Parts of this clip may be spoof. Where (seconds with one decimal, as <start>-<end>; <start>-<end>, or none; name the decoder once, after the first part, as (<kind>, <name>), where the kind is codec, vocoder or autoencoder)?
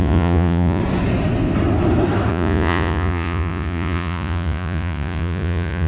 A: 0.0-0.8 (vocoder, Vocos); 2.3-5.9